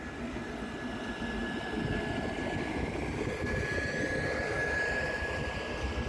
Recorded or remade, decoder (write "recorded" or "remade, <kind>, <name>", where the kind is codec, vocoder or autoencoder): recorded